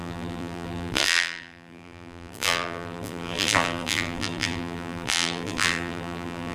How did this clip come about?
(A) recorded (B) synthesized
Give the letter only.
B